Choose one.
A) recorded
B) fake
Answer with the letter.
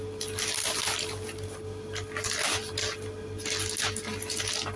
A